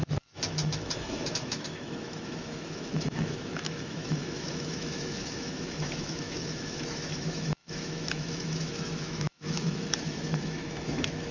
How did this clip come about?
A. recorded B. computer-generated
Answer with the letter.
B